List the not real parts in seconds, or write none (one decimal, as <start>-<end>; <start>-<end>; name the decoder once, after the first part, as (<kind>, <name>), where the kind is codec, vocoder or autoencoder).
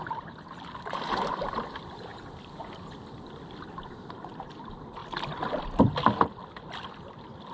none